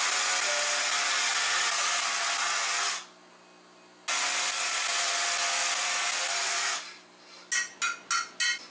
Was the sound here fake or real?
real